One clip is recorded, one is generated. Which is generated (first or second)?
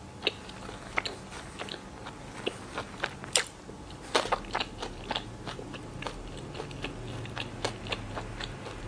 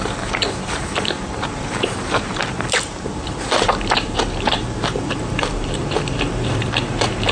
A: second